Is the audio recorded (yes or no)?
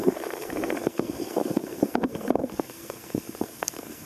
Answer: no